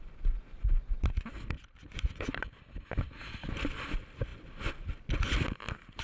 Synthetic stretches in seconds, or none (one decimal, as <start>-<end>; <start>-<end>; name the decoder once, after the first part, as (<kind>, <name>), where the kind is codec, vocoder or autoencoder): none